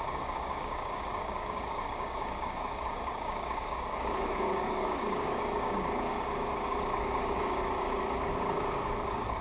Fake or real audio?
fake